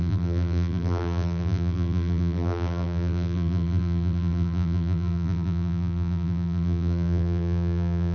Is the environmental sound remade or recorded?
remade